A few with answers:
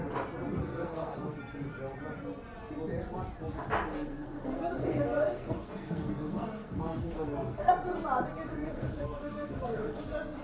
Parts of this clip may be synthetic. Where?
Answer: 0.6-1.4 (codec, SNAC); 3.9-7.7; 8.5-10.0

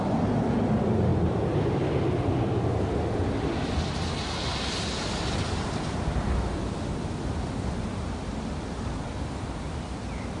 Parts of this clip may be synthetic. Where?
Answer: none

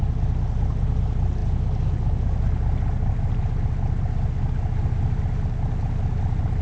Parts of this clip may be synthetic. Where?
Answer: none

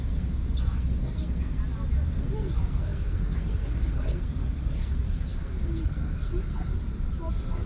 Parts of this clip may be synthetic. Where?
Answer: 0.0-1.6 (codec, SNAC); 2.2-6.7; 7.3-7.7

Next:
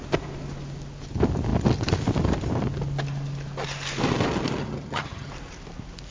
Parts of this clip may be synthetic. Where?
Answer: 4.6-5.3 (vocoder, HiFi-GAN)

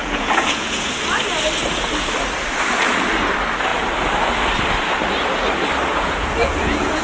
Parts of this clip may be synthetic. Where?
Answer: 0.0-1.0 (vocoder, Vocos); 5.9-7.0

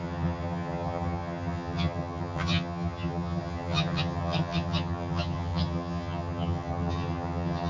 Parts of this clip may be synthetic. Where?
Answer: 0.0-7.7 (vocoder, HiFi-GAN)